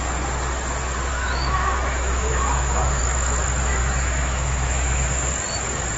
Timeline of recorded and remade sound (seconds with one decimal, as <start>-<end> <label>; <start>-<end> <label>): 0.0-1.1 recorded; 1.1-3.0 remade; 3.0-3.8 recorded; 3.8-5.3 remade; 5.3-6.0 recorded